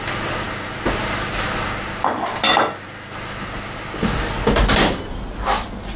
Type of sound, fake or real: real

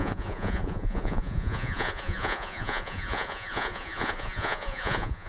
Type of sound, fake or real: fake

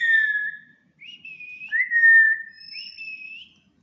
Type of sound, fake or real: real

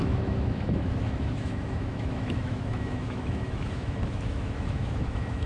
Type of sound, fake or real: fake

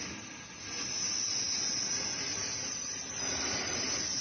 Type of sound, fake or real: real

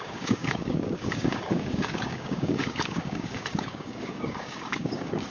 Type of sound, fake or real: fake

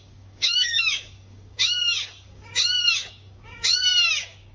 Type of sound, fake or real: fake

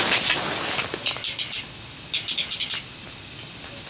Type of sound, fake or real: real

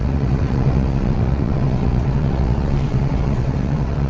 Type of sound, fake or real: fake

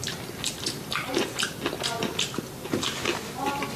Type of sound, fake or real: real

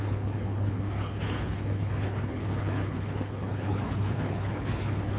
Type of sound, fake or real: fake